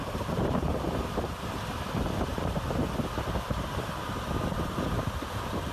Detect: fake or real fake